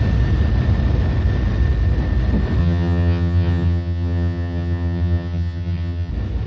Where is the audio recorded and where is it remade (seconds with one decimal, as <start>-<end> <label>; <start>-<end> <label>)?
0.0-2.6 recorded; 2.6-6.1 remade; 6.1-6.5 recorded